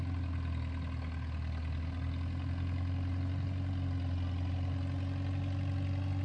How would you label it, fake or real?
real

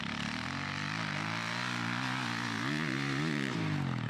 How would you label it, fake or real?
real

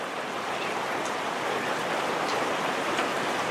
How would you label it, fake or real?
real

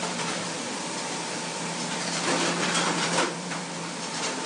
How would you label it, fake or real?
fake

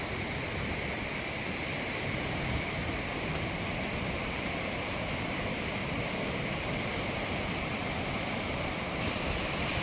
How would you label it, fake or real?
fake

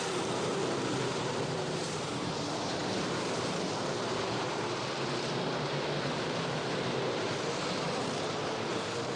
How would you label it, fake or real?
fake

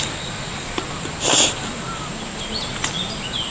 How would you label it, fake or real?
real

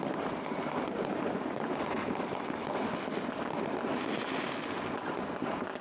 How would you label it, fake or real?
real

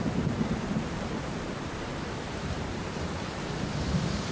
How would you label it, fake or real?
fake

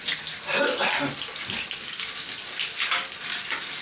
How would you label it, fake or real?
real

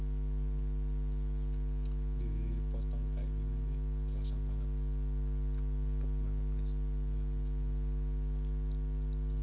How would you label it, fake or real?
real